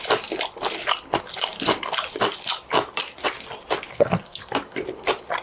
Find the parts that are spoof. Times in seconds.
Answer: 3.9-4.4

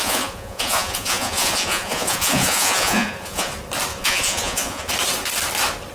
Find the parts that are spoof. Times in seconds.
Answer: 0.0-3.5; 3.9-4.9

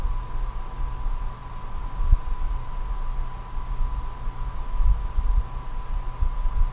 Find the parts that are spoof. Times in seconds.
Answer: none

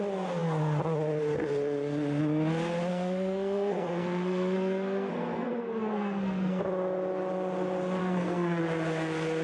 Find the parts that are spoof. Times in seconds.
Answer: 2.9-6.6; 8.0-8.6